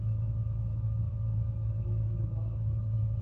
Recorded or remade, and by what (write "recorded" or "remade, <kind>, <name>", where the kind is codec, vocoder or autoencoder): remade, codec, DAC